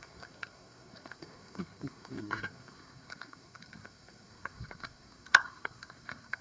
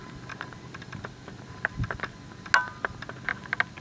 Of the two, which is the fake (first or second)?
first